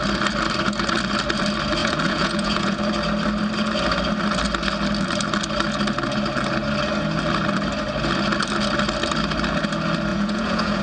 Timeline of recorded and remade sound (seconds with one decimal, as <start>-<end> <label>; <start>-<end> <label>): 0.0-1.8 recorded; 1.8-2.8 remade; 2.8-10.1 recorded; 10.1-10.8 remade